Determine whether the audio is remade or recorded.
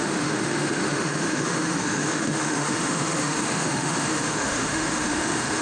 remade